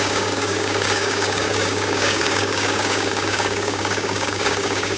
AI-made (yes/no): yes